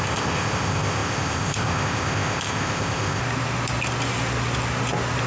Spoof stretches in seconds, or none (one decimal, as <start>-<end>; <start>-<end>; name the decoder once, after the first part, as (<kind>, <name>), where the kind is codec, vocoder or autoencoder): 0.0-3.2 (codec, ZipCodec)